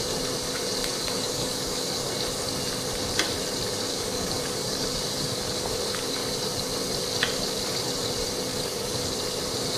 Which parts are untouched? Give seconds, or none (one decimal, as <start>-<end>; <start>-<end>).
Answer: 0.0-1.0; 2.1-3.9; 5.8-8.5; 9.1-9.8